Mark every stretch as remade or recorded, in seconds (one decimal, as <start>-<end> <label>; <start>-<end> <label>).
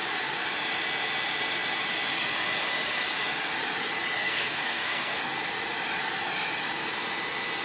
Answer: 0.0-4.2 recorded; 4.2-5.2 remade; 5.2-7.6 recorded